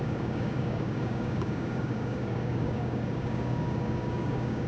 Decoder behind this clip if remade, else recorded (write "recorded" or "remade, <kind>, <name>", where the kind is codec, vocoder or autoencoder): remade, codec, DAC